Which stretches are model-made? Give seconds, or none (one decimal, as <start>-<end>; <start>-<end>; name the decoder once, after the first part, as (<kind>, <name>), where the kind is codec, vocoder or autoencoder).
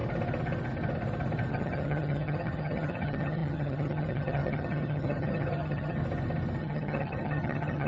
1.5-6.0 (vocoder, HiFi-GAN); 6.6-7.9